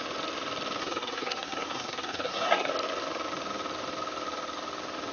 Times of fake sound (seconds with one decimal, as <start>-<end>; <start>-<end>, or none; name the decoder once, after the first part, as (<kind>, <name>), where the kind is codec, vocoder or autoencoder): 0.8-2.7 (codec, SNAC)

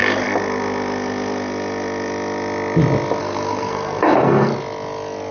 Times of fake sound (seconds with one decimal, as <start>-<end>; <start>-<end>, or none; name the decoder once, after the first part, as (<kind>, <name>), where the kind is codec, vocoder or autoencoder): 3.2-4.5 (codec, SNAC)

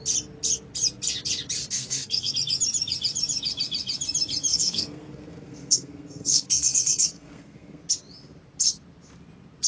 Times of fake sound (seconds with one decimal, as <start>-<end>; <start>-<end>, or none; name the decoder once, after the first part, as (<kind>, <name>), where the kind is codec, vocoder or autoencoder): 1.6-2.3 (codec, SNAC); 4.5-7.8

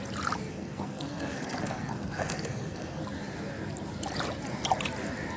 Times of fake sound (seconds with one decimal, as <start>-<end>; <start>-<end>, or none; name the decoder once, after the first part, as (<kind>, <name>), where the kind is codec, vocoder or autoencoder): 0.5-3.0 (codec, SNAC)

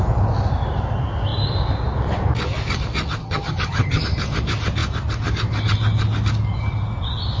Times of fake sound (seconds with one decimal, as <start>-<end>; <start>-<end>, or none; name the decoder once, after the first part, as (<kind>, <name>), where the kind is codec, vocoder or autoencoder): 3.2-4.0 (vocoder, HiFi-GAN)